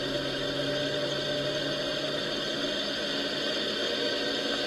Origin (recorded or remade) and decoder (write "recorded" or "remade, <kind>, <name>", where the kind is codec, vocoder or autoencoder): remade, vocoder, BigVGAN v2